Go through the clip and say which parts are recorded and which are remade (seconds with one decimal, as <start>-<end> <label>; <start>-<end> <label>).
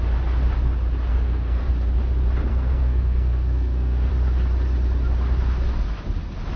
0.0-1.1 recorded; 1.1-1.7 remade; 1.7-2.5 recorded; 2.5-4.1 remade; 4.1-6.6 recorded